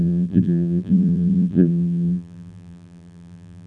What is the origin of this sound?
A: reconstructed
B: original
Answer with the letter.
A